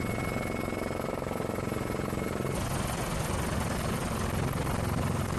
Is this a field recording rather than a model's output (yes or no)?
yes